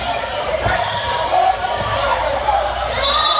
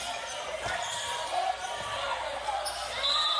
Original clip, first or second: second